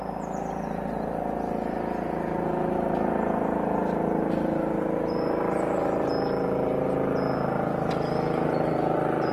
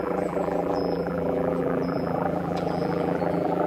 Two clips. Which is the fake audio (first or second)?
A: second